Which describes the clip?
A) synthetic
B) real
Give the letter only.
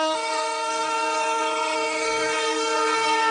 A